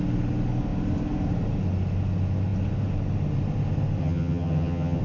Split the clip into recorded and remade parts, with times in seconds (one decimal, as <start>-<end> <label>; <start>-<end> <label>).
0.0-4.0 recorded; 4.0-5.0 remade